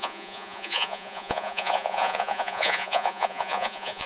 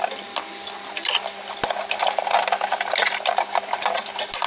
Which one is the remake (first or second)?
first